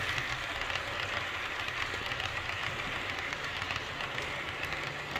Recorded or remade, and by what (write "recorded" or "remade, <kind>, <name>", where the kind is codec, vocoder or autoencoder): recorded